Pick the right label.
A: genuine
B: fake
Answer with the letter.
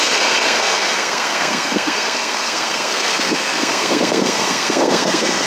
B